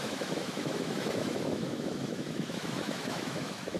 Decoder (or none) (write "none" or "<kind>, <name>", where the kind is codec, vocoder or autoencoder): autoencoder, DAC-VAE